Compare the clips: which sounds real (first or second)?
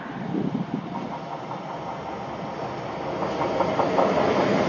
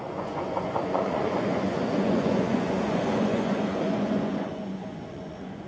first